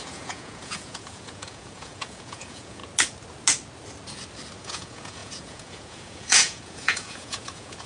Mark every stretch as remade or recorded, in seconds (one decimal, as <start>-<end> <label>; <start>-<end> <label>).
0.0-2.8 remade; 2.8-4.6 recorded; 4.6-7.9 remade